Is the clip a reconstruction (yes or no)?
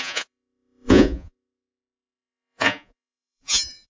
yes